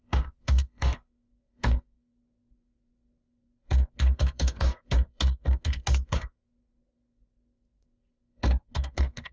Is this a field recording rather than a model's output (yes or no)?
no